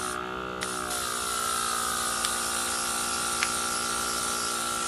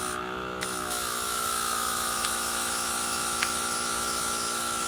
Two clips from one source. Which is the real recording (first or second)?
first